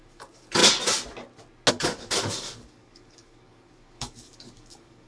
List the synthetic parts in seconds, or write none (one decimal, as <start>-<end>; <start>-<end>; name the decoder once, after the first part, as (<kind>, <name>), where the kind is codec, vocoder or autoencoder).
0.0-0.6 (codec, DAC); 1.7-5.1